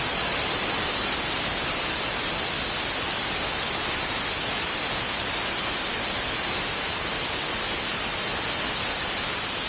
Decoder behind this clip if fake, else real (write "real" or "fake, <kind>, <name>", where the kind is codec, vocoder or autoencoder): real